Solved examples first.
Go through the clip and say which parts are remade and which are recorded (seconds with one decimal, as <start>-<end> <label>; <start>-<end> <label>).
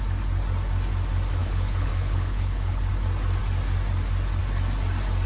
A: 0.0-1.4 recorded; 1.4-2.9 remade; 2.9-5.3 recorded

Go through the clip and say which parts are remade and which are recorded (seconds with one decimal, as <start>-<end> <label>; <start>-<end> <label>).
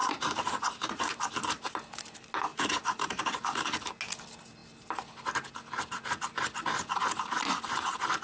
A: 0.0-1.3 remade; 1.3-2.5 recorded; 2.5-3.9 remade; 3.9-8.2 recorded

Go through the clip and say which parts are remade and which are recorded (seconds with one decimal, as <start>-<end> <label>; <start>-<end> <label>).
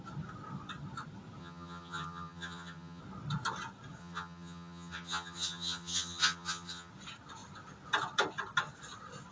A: 0.0-1.4 recorded; 1.4-3.0 remade; 3.0-4.0 recorded; 4.0-6.9 remade; 6.9-9.3 recorded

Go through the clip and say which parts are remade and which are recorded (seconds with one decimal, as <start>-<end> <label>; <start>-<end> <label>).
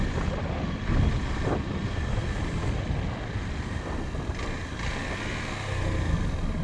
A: 0.0-6.6 recorded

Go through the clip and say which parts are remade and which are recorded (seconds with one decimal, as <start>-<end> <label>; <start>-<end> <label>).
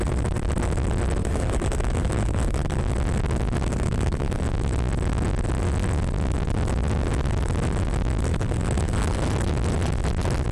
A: 0.0-1.2 recorded; 1.2-2.8 remade; 2.8-3.7 recorded; 3.7-4.4 remade; 4.4-8.3 recorded; 8.3-9.2 remade; 9.2-10.5 recorded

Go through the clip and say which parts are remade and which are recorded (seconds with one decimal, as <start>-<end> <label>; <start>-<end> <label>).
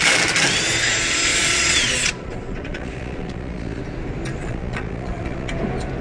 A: 0.0-1.3 recorded; 1.3-3.8 remade; 3.8-4.4 recorded; 4.4-5.5 remade; 5.5-6.0 recorded